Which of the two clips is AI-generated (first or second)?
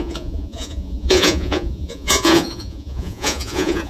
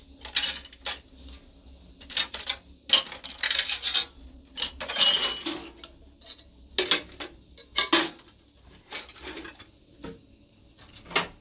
first